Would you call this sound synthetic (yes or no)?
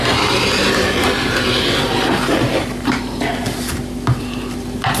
no